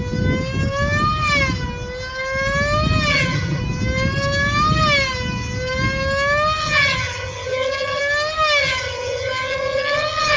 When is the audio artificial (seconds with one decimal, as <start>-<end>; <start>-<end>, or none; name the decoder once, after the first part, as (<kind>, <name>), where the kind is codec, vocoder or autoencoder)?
3.1-3.6 (vocoder, HiFi-GAN); 6.6-8.0; 8.6-10.4